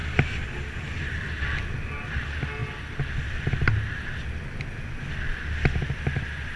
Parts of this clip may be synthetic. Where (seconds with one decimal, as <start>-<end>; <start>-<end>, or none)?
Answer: none